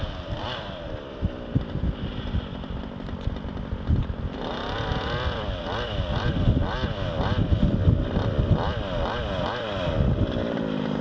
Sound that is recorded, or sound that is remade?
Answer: remade